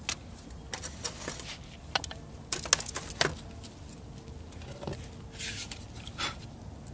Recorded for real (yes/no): yes